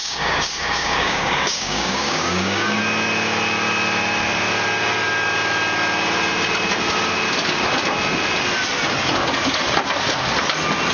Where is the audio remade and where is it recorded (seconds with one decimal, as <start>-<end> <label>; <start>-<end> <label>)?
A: 0.0-2.8 remade; 2.8-10.9 recorded